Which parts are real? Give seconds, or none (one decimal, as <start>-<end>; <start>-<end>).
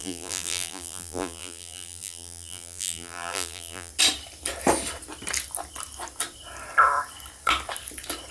3.9-8.3